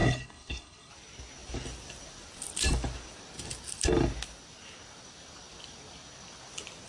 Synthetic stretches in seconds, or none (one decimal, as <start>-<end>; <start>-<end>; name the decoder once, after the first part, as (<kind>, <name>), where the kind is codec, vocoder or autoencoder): 0.0-0.9 (codec, HILCodec)